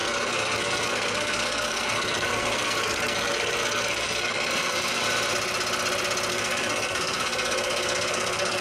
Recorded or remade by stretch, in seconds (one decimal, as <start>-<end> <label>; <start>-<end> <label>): 0.0-5.0 remade; 5.0-6.3 recorded; 6.3-8.6 remade